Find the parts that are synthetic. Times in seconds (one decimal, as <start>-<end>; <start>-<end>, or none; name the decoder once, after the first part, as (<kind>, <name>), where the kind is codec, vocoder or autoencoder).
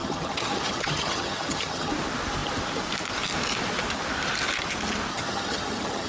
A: 0.0-1.9 (vocoder, HiFi-GAN); 5.1-6.1